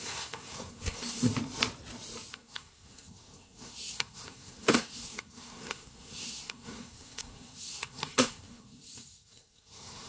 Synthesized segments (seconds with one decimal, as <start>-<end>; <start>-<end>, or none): 0.0-1.3; 2.3-10.1